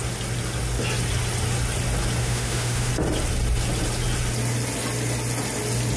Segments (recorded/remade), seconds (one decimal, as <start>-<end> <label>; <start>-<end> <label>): 0.0-2.2 recorded; 2.2-2.9 remade; 2.9-6.0 recorded